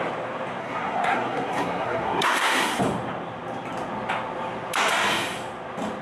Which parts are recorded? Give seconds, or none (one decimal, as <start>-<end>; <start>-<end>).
0.0-0.6; 2.8-6.0

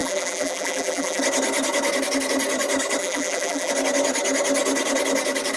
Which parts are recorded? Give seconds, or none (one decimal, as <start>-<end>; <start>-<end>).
1.2-3.0; 3.7-5.6

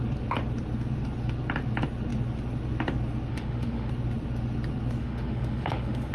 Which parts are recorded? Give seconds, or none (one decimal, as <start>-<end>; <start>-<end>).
0.0-3.3; 3.9-5.0

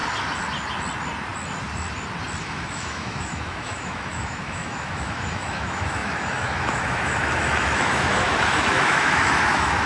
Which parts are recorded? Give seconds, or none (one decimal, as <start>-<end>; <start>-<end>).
0.0-2.4

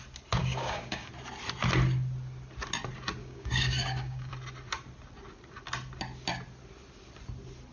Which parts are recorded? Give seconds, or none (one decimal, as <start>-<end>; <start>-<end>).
0.0-0.4; 1.1-3.2; 4.3-7.7